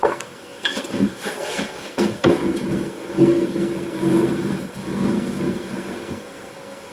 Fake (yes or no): yes